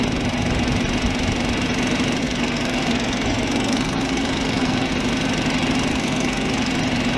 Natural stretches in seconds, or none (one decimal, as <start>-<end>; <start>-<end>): 0.0-2.2; 4.9-5.9; 6.7-7.2